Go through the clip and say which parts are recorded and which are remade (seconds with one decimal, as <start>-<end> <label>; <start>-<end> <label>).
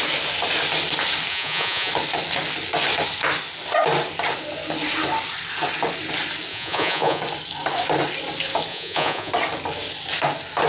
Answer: 0.0-1.3 recorded; 1.3-1.9 remade; 1.9-6.5 recorded; 6.5-7.2 remade; 7.2-8.7 recorded; 8.7-9.3 remade; 9.3-10.7 recorded